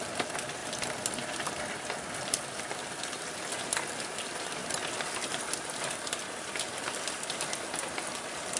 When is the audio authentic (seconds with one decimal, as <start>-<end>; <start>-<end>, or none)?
0.0-8.6